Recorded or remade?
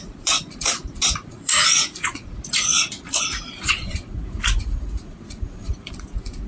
remade